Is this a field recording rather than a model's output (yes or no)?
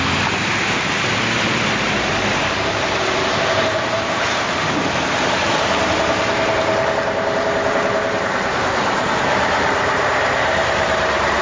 no